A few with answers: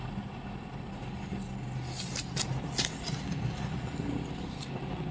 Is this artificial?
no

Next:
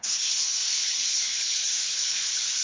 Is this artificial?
yes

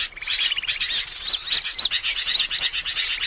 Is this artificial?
no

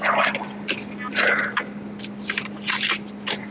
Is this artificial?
no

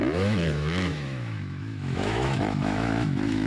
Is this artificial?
yes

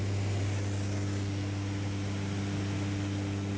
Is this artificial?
no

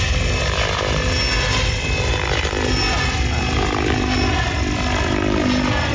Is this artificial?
no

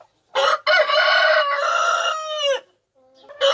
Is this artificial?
no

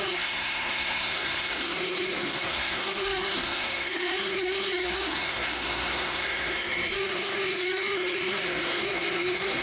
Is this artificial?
yes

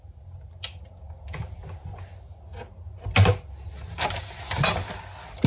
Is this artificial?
no